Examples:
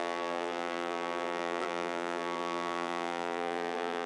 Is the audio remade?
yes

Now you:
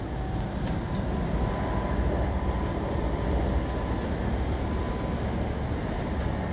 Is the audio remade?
no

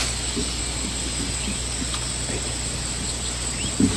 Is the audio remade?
no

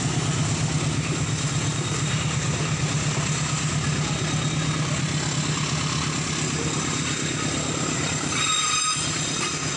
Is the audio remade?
no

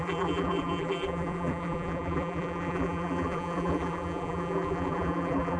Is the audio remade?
yes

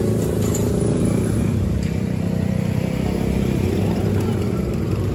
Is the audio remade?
yes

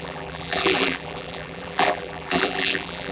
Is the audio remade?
yes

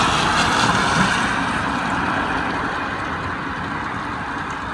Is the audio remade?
no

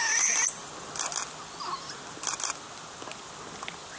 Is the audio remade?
no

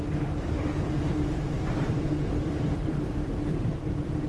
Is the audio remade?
yes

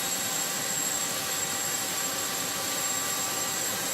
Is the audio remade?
yes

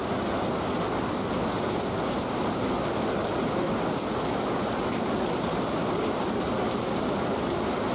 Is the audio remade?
no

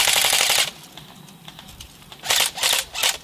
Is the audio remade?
no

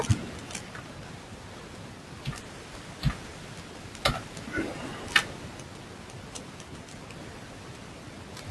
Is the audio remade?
no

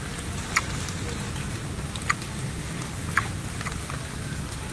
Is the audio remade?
no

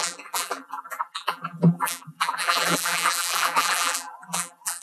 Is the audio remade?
yes